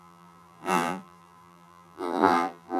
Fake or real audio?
fake